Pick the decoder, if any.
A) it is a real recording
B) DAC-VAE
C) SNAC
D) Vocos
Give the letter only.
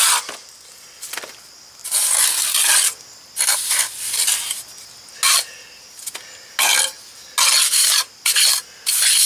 A